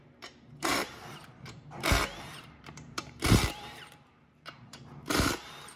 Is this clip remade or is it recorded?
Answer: remade